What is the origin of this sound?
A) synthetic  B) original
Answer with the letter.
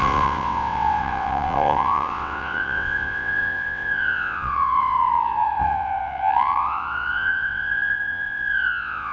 A